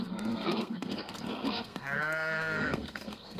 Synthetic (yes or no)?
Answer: yes